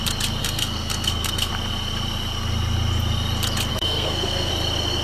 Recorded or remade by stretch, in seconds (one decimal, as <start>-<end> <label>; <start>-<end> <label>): 0.0-0.4 recorded; 0.4-1.5 remade; 1.5-3.7 recorded; 3.7-4.5 remade; 4.5-5.0 recorded